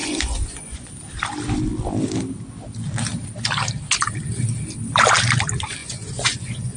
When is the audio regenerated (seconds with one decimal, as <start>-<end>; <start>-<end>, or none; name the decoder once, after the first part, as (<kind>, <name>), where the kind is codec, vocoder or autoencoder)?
0.0-0.9 (vocoder, Vocos); 5.8-6.8

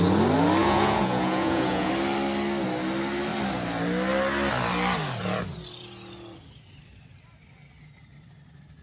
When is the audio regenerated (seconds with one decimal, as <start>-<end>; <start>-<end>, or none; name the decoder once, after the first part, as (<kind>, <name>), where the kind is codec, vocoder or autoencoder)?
0.6-1.9 (vocoder, Vocos)

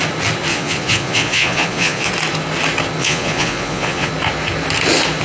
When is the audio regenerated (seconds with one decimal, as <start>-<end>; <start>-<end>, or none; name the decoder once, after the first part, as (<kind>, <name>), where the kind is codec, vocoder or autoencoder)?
0.5-2.1 (vocoder, Vocos); 3.0-4.1

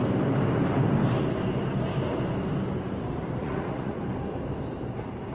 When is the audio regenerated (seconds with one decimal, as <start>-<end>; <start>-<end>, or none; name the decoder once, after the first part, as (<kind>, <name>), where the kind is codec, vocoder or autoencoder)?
3.4-4.0 (vocoder, Vocos)

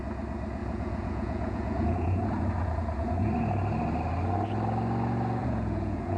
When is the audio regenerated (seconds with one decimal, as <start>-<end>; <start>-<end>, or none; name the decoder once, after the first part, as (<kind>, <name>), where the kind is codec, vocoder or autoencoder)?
0.6-3.3 (vocoder, Vocos); 5.4-6.2